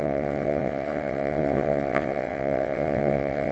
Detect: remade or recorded remade